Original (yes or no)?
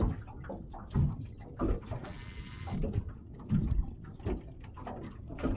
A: yes